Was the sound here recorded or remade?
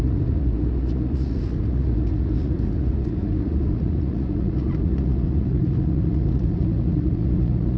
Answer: remade